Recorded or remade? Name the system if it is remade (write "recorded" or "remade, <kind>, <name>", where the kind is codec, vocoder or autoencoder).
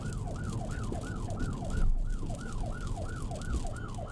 recorded